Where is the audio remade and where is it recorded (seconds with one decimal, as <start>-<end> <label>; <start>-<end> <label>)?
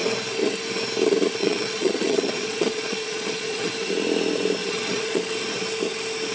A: 0.0-1.4 recorded; 1.4-3.7 remade; 3.7-4.6 recorded; 4.6-5.2 remade; 5.2-6.3 recorded